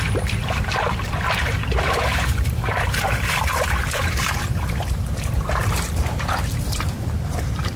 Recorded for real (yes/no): no